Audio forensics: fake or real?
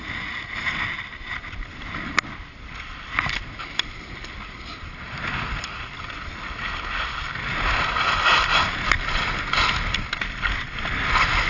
real